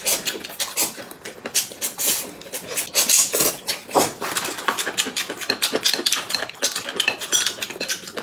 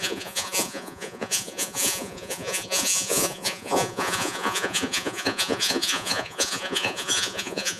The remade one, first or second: second